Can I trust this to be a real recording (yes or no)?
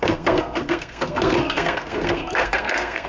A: no